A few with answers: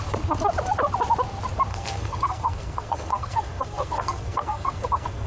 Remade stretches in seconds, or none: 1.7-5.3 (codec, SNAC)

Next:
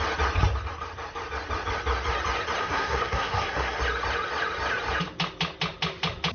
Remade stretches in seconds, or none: 2.6-3.8 (codec, SNAC)

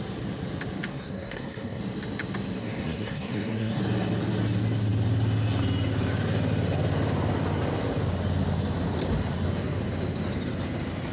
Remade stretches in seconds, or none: 0.9-1.8 (codec, SNAC); 2.6-3.8

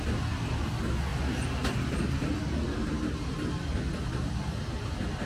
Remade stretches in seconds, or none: none

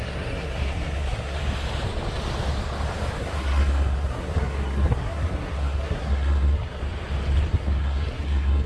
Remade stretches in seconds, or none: 0.0-1.4 (codec, SNAC); 3.2-6.8; 7.5-8.7

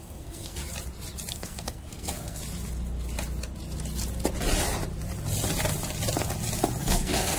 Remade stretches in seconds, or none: 0.0-0.6 (codec, SNAC); 1.3-2.4; 6.8-7.4